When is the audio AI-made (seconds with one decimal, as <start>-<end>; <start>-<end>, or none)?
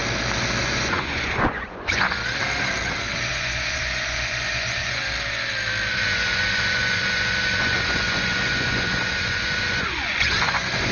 0.6-2.2; 3.3-5.0; 5.9-10.9